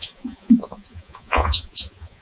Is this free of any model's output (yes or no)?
no